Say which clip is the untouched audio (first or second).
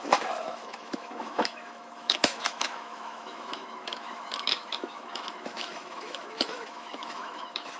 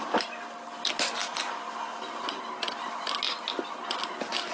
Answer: second